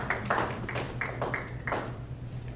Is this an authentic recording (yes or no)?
no